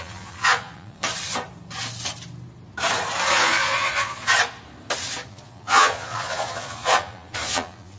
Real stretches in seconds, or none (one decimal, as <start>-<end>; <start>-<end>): 1.1-3.3; 4.3-5.3